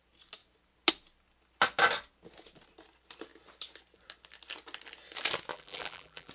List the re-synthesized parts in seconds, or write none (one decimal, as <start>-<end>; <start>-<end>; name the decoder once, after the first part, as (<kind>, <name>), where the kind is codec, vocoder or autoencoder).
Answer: 5.5-6.3 (vocoder, BigVGAN v2)